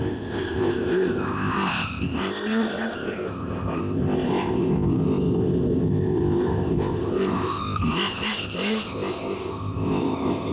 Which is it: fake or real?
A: fake